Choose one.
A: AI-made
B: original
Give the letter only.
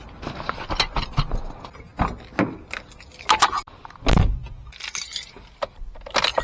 B